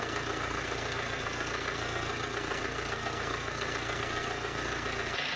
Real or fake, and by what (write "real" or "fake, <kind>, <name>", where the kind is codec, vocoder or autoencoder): fake, codec, SNAC